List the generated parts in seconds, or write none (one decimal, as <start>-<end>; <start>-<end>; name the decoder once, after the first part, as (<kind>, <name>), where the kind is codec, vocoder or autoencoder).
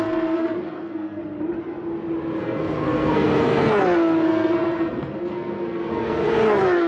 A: 0.0-1.2 (codec, SNAC); 2.4-6.9